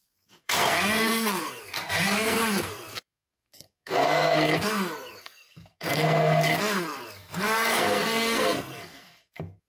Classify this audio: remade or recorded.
remade